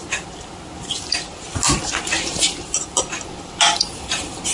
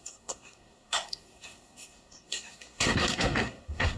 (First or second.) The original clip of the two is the first